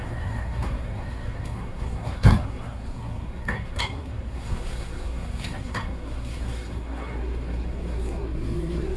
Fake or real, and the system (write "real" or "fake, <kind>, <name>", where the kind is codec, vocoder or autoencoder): fake, codec, SNAC